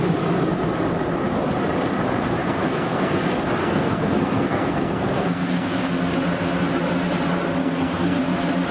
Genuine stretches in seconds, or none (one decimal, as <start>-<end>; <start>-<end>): 0.0-2.4; 3.2-3.6; 5.9-7.6; 8.2-8.7